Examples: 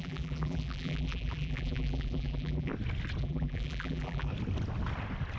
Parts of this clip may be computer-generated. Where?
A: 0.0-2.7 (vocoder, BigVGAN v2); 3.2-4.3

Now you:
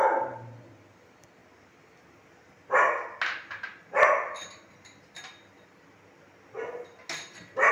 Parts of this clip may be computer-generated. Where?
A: none

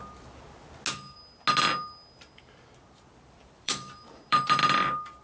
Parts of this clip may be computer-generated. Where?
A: 3.1-4.6 (vocoder, BigVGAN v2)

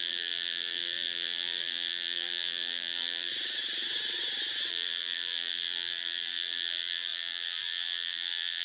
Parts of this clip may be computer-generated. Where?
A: 0.0-3.3 (vocoder, BigVGAN v2); 4.7-8.6

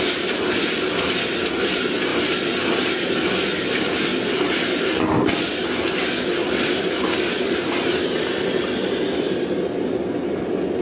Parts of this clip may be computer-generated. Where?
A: 2.1-3.6 (vocoder, BigVGAN v2); 4.1-5.6

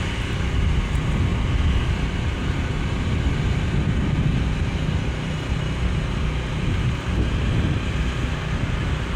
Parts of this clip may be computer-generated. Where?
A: none